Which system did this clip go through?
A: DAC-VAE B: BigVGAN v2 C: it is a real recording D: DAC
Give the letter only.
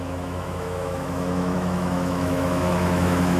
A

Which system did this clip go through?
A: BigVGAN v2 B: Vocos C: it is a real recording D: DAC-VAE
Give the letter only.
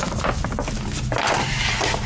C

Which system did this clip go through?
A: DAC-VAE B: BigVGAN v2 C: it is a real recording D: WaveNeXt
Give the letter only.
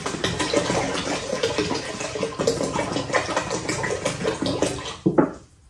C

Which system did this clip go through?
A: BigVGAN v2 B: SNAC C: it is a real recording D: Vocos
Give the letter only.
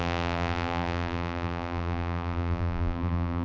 A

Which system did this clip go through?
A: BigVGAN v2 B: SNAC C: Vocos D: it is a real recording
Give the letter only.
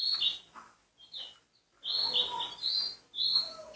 D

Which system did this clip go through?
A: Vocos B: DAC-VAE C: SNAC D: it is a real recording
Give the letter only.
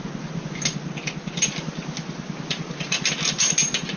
D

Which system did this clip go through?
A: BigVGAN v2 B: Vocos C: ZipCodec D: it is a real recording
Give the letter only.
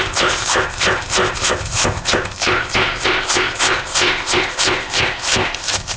C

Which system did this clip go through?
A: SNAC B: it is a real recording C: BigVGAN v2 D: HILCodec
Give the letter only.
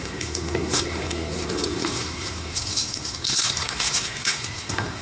A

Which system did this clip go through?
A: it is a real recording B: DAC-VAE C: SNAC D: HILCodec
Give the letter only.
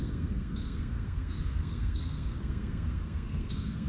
C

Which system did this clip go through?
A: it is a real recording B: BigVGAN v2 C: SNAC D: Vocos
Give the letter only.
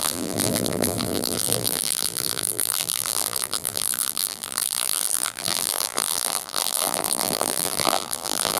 B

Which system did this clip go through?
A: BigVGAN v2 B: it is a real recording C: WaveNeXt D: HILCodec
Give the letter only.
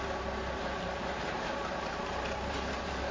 A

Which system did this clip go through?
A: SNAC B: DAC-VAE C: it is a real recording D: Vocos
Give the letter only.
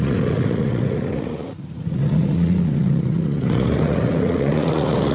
D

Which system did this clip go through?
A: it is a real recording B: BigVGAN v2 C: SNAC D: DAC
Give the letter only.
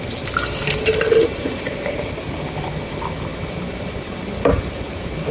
A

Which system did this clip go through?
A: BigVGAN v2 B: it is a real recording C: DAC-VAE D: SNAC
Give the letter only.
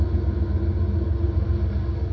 B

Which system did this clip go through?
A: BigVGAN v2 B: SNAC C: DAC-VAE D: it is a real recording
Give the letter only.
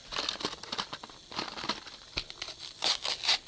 D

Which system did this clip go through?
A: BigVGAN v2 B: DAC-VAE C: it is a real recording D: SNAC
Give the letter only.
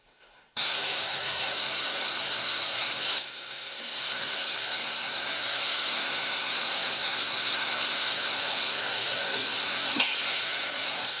D